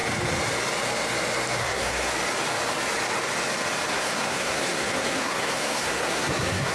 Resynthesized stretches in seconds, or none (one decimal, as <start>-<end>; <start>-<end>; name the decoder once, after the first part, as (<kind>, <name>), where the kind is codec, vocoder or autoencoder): 1.6-2.1 (codec, SNAC); 3.9-6.7